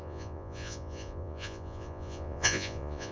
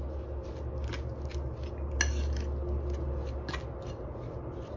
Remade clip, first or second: first